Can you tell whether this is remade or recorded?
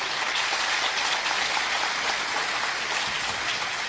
recorded